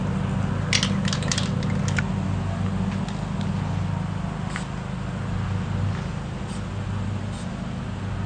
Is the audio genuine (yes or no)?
yes